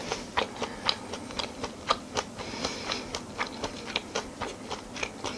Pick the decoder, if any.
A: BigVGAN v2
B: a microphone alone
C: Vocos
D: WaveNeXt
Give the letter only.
B